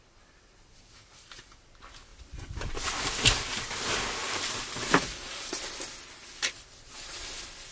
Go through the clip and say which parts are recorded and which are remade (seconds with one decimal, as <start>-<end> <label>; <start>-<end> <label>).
0.0-4.2 recorded; 4.2-5.5 remade; 5.5-7.7 recorded